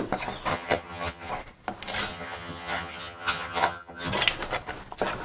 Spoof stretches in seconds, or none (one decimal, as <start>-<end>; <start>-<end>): 0.5-1.3; 2.1-4.1

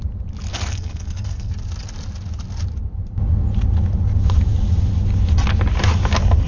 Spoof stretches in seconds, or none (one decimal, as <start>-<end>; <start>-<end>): 0.7-1.5

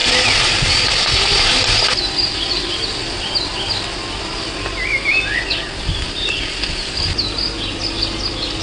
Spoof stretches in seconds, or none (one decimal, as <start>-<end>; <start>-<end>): none

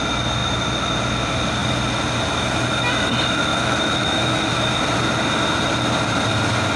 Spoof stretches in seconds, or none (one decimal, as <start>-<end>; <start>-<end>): 3.5-4.7

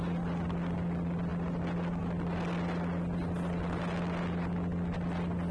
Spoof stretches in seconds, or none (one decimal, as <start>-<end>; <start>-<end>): none